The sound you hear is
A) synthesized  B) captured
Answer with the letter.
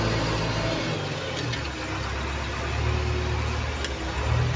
B